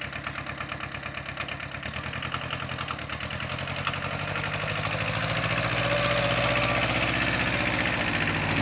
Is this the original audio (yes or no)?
yes